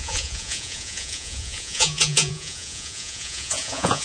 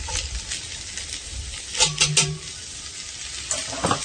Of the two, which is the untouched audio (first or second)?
second